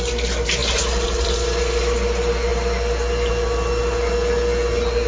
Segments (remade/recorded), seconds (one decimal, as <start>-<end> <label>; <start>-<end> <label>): 0.0-5.1 recorded